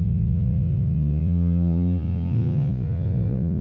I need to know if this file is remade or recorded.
remade